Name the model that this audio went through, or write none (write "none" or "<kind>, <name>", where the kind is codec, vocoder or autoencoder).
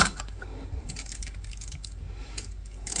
codec, DAC